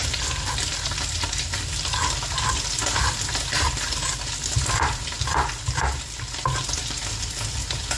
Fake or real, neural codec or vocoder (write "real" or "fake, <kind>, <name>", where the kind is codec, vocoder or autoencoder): fake, vocoder, BigVGAN v2